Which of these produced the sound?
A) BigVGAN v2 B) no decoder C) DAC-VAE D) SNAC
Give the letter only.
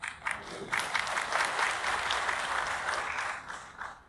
B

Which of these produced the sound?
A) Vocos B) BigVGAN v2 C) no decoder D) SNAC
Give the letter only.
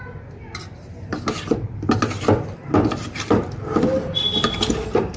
C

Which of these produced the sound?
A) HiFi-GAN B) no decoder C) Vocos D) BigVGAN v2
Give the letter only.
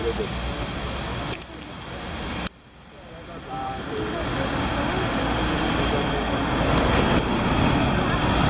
B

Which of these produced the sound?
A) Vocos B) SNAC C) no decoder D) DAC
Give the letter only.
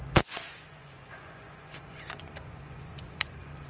A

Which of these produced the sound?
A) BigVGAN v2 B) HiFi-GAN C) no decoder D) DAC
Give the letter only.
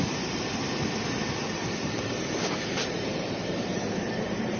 A